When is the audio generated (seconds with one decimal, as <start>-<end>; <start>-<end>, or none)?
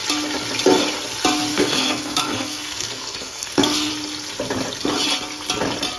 1.5-3.9